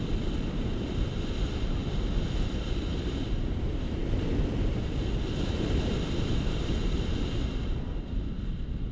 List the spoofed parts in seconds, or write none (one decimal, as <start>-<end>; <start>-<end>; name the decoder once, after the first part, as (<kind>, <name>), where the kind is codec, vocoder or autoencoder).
0.0-8.9 (vocoder, BigVGAN v2)